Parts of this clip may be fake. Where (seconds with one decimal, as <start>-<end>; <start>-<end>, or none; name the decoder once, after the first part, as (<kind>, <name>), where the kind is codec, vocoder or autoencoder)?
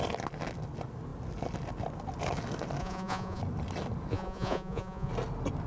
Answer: 2.8-3.4 (vocoder, Vocos); 4.1-5.1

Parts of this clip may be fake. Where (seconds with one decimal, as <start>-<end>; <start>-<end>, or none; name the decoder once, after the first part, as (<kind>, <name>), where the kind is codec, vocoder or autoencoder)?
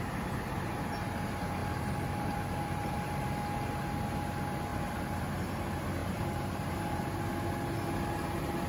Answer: 1.6-3.4 (vocoder, BigVGAN v2); 4.7-5.2; 6.0-7.2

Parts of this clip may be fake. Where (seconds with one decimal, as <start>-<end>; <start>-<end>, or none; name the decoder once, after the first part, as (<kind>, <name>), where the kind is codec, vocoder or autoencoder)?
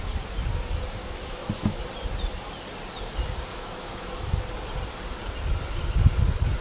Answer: 1.0-1.8 (autoencoder, DAC-VAE); 3.5-4.2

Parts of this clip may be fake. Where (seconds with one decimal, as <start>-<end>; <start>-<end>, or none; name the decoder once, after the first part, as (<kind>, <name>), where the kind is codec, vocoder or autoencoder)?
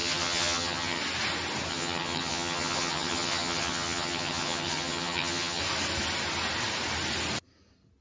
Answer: 0.0-1.0 (vocoder, HiFi-GAN); 1.7-5.6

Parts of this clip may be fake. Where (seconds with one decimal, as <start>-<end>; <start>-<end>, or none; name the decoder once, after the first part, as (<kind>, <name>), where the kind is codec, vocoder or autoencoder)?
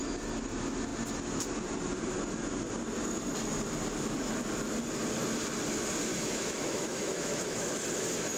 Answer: 6.1-7.7 (autoencoder, DAC-VAE)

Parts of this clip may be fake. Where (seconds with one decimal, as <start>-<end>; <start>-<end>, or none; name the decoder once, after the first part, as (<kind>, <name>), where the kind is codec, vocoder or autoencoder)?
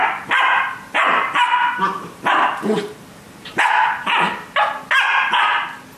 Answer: 0.0-3.6 (vocoder, BigVGAN v2)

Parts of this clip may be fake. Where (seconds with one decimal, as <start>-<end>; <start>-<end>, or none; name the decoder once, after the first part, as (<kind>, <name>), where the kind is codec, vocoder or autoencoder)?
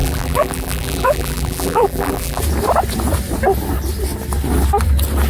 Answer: 0.0-2.4 (vocoder, BigVGAN v2)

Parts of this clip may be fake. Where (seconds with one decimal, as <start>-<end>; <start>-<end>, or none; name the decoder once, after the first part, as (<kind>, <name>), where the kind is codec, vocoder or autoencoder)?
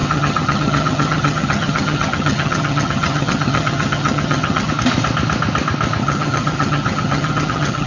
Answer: 0.0-4.7 (vocoder, HiFi-GAN); 6.0-7.9